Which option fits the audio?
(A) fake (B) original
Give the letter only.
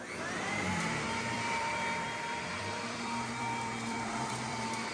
A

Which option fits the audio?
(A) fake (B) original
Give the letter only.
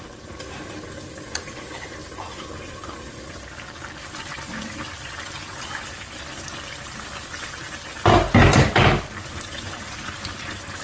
B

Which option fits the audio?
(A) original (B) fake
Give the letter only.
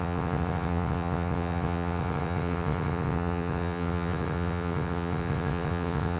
B